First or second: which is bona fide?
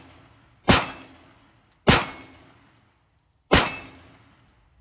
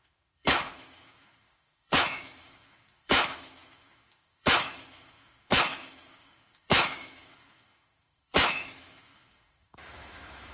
first